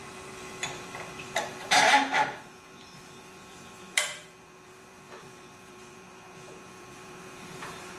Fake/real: fake